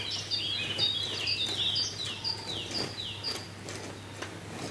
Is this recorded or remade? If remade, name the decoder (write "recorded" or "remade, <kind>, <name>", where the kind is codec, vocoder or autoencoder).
recorded